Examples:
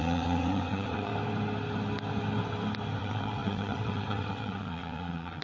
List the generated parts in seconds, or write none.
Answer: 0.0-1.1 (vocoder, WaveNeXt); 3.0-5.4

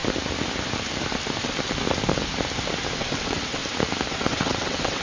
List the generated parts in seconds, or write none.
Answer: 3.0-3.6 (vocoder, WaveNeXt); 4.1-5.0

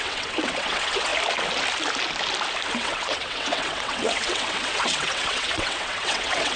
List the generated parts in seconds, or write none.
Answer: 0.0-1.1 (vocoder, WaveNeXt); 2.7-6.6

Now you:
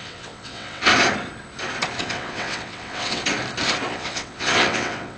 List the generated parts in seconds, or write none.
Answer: 0.0-0.9 (vocoder, WaveNeXt); 2.0-3.2; 3.9-5.2